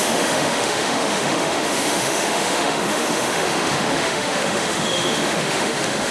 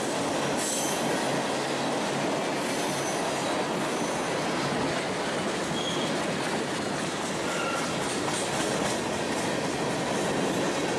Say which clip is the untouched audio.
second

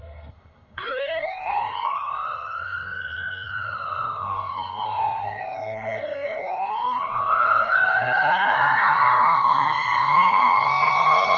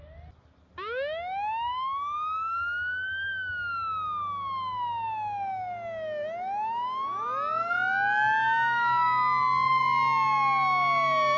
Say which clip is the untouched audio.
second